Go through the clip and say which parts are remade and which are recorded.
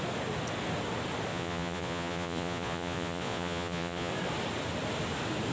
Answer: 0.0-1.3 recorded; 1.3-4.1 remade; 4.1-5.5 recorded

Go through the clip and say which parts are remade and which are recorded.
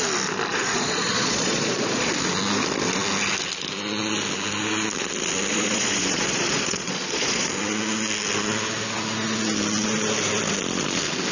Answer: 0.0-0.5 recorded; 0.5-2.1 remade; 2.1-5.5 recorded; 5.5-7.5 remade; 7.5-11.3 recorded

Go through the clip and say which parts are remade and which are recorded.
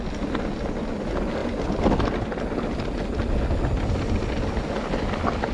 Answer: 0.0-5.5 recorded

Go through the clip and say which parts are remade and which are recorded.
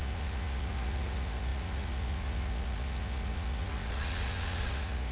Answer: 0.0-5.1 remade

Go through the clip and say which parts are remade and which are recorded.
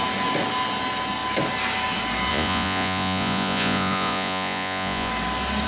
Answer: 0.0-2.3 recorded; 2.3-5.1 remade; 5.1-5.7 recorded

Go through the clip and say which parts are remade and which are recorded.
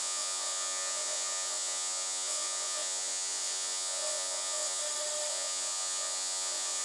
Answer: 0.0-4.8 remade; 4.8-5.3 recorded; 5.3-6.8 remade